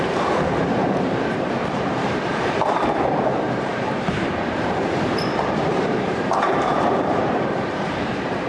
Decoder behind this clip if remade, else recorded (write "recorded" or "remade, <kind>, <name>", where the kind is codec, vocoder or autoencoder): remade, vocoder, BigVGAN v2